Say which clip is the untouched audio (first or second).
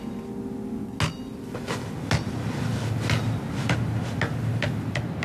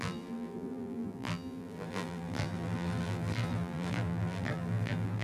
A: first